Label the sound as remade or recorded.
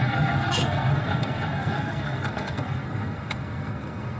remade